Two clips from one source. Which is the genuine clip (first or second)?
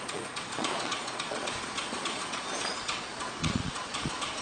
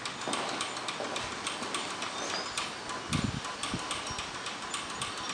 second